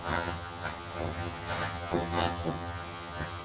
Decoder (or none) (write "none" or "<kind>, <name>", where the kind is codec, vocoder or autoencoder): vocoder, HiFi-GAN